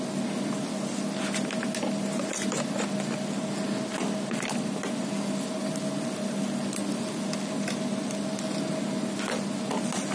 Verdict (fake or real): real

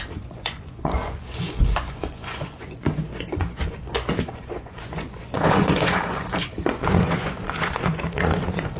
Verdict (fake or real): fake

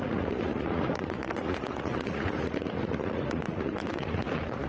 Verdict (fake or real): fake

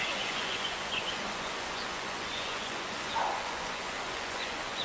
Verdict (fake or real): fake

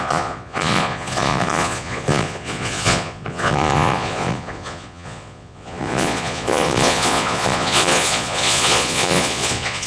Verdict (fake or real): fake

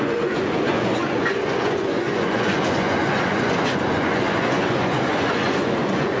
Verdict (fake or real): fake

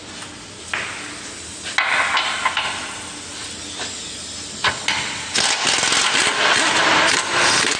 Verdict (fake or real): real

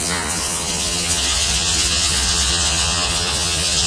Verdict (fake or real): fake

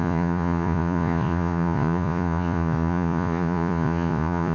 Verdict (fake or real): fake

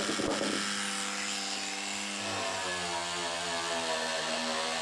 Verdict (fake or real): real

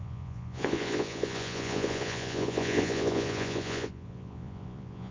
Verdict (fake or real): fake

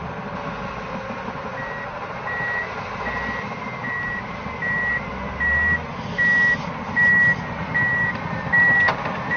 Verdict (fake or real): real